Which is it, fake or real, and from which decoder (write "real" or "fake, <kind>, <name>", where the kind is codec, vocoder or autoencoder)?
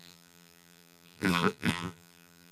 fake, vocoder, BigVGAN v2